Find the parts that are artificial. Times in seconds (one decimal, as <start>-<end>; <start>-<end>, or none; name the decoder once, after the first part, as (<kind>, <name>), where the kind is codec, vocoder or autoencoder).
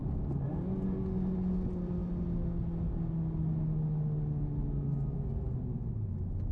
none